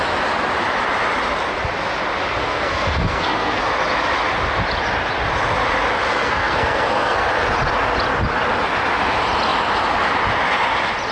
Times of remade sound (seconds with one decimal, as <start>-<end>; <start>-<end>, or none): 2.4-3.6; 6.1-7.3